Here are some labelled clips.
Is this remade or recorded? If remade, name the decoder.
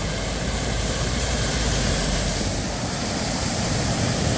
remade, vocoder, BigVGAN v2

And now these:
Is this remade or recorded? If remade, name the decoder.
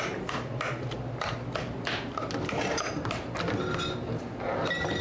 recorded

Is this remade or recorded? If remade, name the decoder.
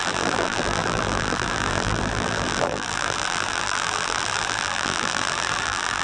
remade, vocoder, BigVGAN v2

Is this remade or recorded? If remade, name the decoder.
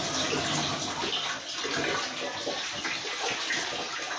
recorded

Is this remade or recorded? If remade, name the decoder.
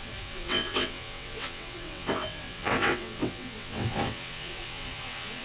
remade, vocoder, WaveNeXt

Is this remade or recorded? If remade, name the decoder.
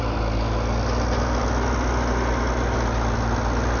recorded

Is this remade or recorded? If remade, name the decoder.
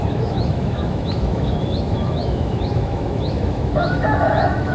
remade, autoencoder, DAC-VAE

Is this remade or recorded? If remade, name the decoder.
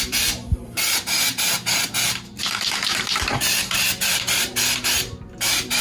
remade, vocoder, BigVGAN v2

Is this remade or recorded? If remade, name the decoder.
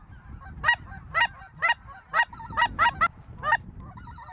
recorded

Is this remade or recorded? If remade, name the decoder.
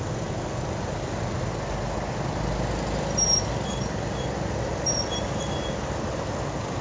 recorded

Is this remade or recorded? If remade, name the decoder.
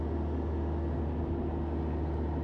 recorded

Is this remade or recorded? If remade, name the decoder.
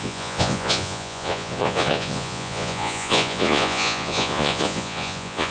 remade, vocoder, Vocos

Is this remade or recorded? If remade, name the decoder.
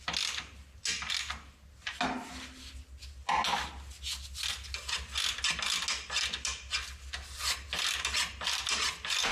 recorded